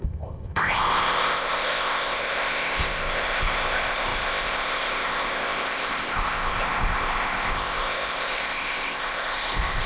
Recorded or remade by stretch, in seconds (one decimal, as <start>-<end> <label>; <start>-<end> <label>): 0.0-9.9 remade